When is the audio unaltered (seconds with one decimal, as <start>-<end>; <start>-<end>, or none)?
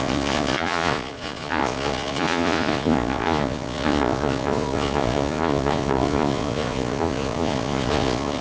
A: none